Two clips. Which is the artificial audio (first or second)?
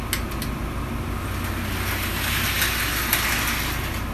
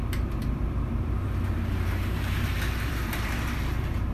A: second